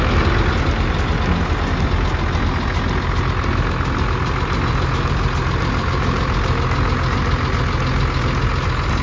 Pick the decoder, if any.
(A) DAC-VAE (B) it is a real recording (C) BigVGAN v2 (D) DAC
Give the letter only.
B